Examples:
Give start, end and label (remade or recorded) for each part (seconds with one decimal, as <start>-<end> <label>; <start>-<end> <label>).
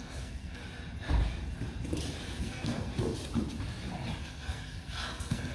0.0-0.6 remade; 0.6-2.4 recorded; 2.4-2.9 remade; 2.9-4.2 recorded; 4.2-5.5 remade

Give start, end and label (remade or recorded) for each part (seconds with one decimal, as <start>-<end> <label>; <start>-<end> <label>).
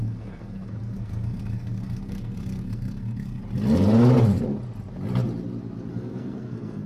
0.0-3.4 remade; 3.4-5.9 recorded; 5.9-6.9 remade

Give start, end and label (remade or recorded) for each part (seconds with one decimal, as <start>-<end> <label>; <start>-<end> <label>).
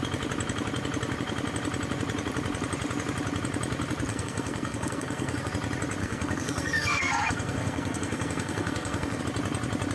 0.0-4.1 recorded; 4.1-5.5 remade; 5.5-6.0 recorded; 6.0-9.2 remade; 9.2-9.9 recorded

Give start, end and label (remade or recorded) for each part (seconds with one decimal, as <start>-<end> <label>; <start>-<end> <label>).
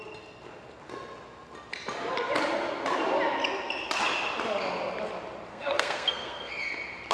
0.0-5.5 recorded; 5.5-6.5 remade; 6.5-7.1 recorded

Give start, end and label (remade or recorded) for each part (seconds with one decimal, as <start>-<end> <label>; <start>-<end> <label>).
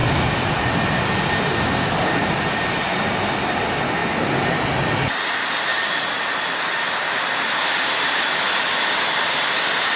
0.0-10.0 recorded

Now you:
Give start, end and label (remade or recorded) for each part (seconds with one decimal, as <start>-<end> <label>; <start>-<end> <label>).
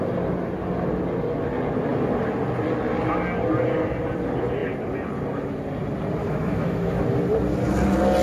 0.0-6.2 recorded; 6.2-7.0 remade; 7.0-8.2 recorded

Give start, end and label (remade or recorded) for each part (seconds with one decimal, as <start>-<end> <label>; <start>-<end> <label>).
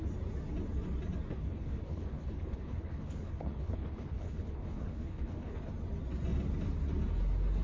0.0-1.3 recorded; 1.3-5.7 remade; 5.7-7.6 recorded